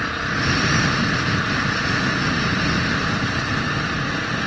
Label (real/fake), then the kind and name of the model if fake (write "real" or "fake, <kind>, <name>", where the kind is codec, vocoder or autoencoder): real